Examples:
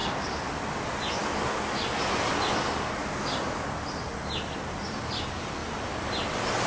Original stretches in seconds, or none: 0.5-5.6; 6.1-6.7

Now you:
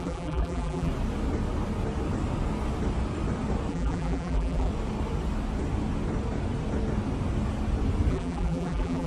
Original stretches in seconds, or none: 0.9-3.7; 4.7-8.1

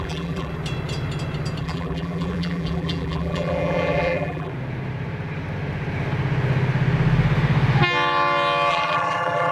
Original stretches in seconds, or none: 0.5-1.6; 4.5-8.7

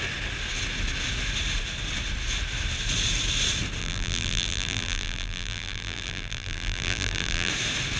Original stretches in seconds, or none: 0.0-3.8; 7.5-8.0

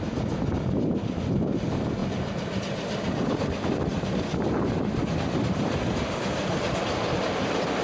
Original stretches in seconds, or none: 0.0-3.9; 6.9-7.8